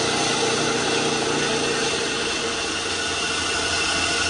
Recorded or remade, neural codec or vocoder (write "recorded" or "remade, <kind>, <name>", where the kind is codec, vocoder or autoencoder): recorded